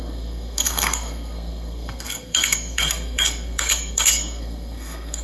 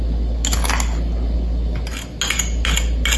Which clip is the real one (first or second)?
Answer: second